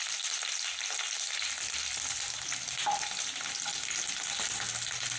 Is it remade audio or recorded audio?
recorded